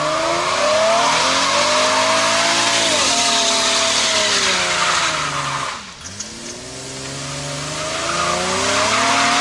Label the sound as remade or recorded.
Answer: recorded